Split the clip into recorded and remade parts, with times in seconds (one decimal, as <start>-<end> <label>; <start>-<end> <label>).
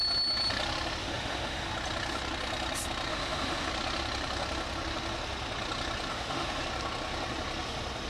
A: 0.0-1.0 recorded; 1.0-1.7 remade; 1.7-3.1 recorded; 3.1-3.7 remade; 3.7-6.1 recorded; 6.1-6.6 remade; 6.6-8.1 recorded